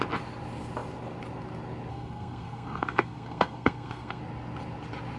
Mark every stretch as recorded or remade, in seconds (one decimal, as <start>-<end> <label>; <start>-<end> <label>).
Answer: 0.0-1.9 recorded; 1.9-4.2 remade; 4.2-5.2 recorded